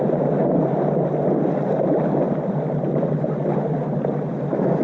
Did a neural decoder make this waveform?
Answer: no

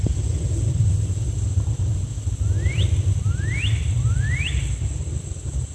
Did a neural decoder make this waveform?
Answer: no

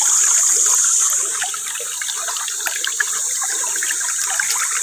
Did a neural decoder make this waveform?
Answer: no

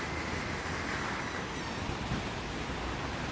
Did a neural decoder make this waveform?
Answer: no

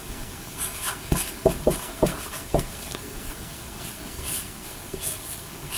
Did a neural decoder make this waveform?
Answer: yes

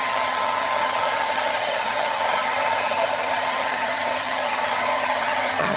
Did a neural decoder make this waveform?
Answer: yes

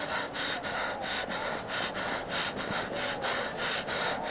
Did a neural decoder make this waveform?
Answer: no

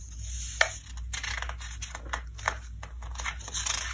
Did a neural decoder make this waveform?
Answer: no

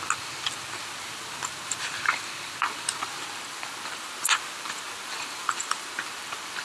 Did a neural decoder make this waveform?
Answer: yes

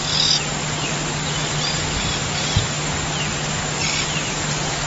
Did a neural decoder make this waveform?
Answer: no